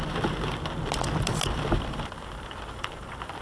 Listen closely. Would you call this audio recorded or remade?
remade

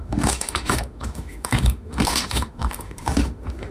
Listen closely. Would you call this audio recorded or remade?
remade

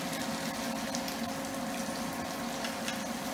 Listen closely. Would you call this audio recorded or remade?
recorded